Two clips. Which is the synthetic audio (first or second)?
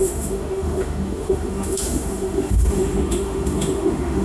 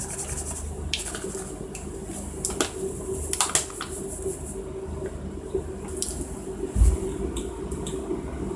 first